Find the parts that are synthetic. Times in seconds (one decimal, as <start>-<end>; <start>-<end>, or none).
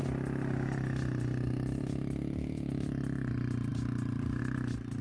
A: none